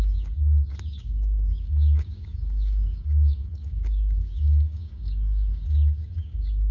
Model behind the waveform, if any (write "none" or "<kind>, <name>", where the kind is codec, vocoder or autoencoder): codec, DAC